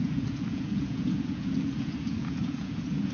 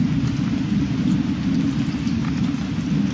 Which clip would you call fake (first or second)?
first